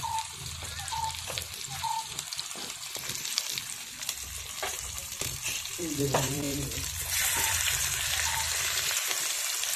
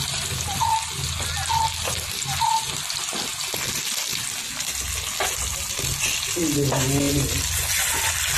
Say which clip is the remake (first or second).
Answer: first